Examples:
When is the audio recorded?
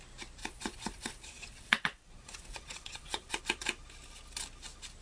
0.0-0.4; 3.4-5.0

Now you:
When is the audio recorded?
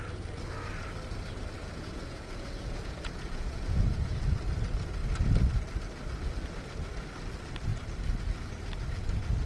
0.0-1.6; 4.2-9.5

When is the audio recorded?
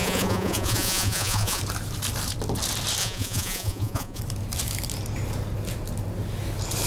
1.6-3.0; 4.2-6.9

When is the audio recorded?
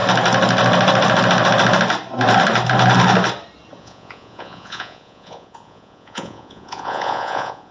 0.0-3.8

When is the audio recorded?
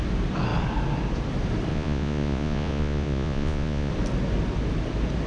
0.0-1.7; 3.9-5.3